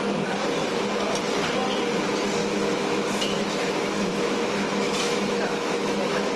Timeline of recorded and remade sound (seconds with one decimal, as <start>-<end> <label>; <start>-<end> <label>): 0.0-2.4 recorded; 2.4-6.4 remade